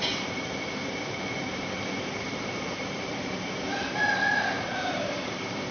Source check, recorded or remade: remade